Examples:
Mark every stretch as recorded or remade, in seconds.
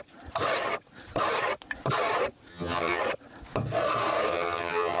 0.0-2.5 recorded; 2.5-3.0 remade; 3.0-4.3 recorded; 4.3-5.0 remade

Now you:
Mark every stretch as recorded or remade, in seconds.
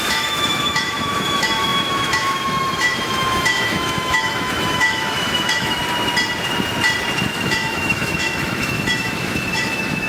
0.0-5.8 remade; 5.8-7.3 recorded; 7.3-10.1 remade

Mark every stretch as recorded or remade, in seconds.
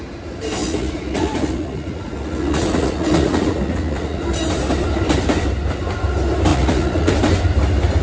0.0-0.6 recorded; 0.6-4.2 remade; 4.2-6.5 recorded; 6.5-7.1 remade; 7.1-8.0 recorded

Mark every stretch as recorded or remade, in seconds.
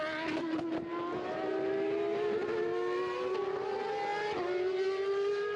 0.0-5.6 recorded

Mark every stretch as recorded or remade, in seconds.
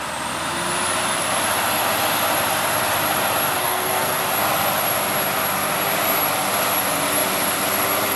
0.0-3.6 recorded; 3.6-4.2 remade; 4.2-8.2 recorded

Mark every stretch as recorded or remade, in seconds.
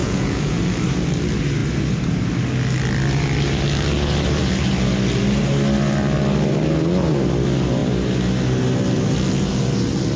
0.0-0.6 remade; 0.6-10.2 recorded